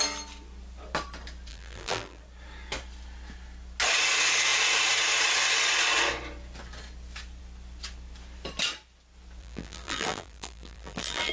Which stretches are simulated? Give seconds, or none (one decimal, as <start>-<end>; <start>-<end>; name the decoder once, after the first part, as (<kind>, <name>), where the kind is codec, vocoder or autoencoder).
1.5-2.2 (vocoder, BigVGAN v2); 9.4-11.3

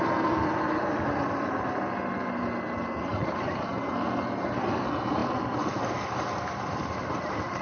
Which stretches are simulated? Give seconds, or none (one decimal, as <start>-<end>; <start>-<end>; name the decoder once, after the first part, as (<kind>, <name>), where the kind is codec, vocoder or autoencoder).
3.1-3.7 (vocoder, BigVGAN v2); 5.2-6.0